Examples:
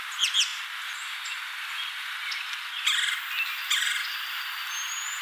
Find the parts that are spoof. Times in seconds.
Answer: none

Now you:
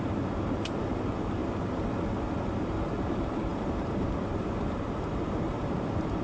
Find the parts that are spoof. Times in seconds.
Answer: 0.0-1.4 (vocoder, BigVGAN v2); 2.5-6.2

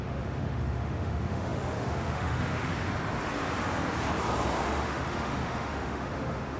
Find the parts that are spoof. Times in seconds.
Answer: 0.0-2.7 (autoencoder, DAC-VAE); 4.6-6.6

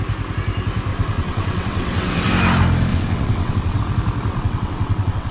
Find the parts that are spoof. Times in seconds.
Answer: 0.9-2.3 (vocoder, WaveNeXt); 2.9-3.8; 4.3-5.3

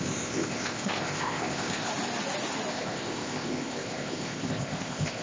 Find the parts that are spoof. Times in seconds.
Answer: 0.0-1.9 (codec, ZipCodec); 2.7-5.2